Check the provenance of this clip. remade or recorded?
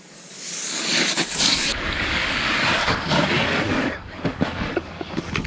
remade